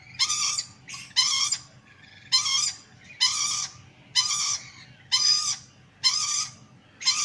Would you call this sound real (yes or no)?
yes